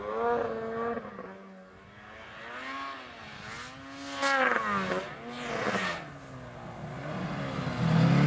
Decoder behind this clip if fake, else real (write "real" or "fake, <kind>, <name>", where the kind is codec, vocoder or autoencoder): real